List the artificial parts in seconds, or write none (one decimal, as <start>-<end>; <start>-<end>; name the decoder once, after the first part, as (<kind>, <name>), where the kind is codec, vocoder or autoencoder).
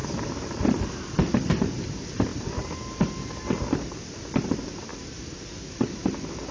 none